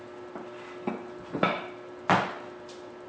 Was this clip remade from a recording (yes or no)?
no